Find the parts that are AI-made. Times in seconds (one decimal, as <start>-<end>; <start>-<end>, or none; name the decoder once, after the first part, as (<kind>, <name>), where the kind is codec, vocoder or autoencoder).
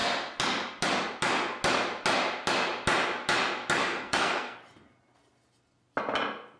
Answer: 3.8-4.6 (codec, SNAC)